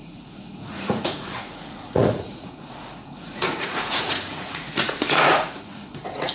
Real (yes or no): no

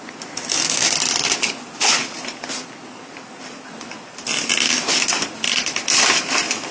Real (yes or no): yes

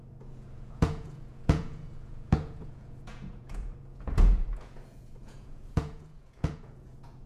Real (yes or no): no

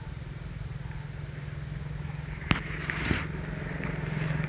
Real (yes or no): yes